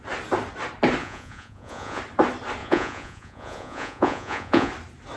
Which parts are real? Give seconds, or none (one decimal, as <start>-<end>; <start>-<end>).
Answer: 0.0-1.0; 2.0-2.6; 4.7-5.2